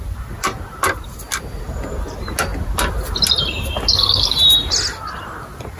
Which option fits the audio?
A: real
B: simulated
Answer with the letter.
A